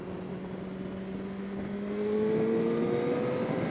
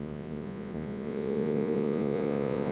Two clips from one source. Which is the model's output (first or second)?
second